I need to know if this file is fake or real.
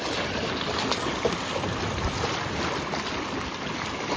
real